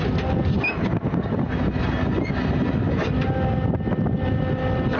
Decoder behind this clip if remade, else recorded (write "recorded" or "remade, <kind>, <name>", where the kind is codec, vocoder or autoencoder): recorded